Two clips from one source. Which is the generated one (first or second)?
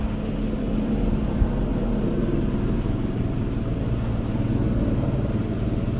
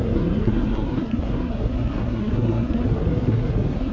second